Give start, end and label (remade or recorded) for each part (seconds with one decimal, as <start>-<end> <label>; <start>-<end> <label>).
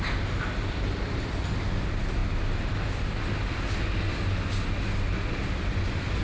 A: 0.0-6.2 recorded